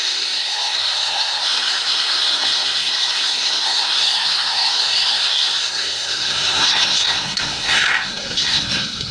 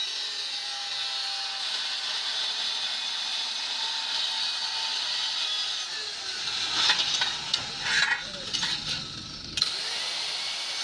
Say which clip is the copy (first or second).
first